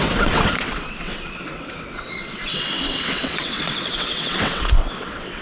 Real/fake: fake